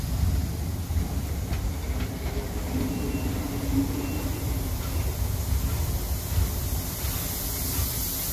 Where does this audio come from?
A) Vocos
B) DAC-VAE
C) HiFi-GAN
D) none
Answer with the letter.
D